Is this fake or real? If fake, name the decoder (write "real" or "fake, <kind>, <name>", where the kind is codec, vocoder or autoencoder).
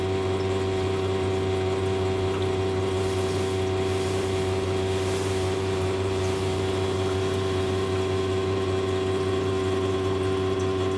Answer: real